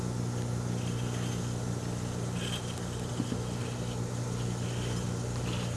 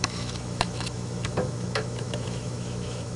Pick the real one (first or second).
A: first